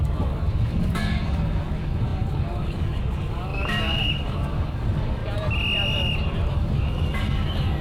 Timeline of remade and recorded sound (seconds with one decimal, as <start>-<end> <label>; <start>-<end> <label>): 0.0-5.2 remade; 5.2-6.5 recorded; 6.5-7.8 remade